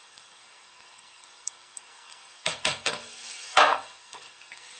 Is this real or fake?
fake